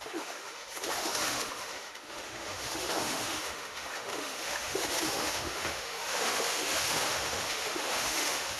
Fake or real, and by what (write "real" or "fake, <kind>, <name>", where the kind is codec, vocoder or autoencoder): fake, autoencoder, DAC-VAE